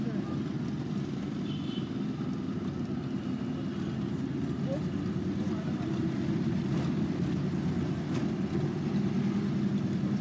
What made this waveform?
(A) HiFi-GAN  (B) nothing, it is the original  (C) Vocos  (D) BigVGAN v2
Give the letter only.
B